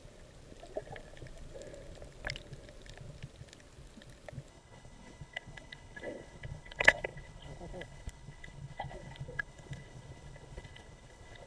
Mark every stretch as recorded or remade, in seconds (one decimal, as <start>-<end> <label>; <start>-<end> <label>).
0.0-4.5 recorded; 4.5-11.5 remade